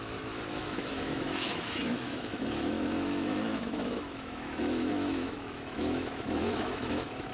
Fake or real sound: fake